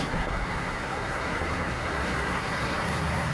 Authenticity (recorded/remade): remade